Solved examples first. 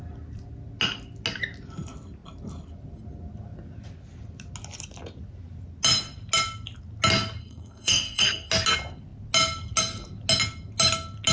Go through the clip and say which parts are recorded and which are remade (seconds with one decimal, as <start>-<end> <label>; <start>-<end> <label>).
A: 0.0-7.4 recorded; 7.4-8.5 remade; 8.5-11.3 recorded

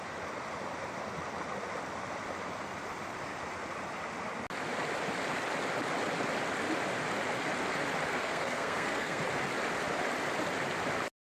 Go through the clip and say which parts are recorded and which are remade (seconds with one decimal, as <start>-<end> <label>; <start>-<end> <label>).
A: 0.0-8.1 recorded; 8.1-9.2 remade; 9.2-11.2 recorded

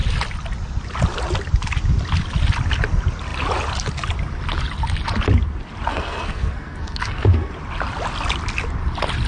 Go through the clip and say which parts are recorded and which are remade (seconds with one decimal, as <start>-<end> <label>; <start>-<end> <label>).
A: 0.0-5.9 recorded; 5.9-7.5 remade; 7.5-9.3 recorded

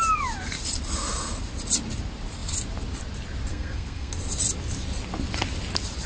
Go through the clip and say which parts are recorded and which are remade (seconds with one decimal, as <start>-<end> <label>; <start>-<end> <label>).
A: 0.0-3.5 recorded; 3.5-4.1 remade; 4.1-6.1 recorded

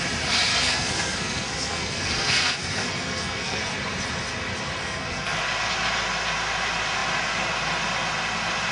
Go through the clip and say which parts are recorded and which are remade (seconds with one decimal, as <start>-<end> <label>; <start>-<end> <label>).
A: 0.0-0.5 recorded; 0.5-3.6 remade; 3.6-4.8 recorded; 4.8-5.4 remade; 5.4-8.7 recorded

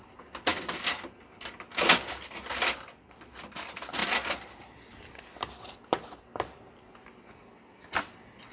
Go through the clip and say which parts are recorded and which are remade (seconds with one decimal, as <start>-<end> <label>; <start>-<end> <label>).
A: 0.0-8.5 recorded